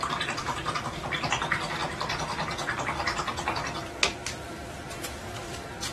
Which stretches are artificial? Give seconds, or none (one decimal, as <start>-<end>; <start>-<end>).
0.0-1.8; 5.2-5.9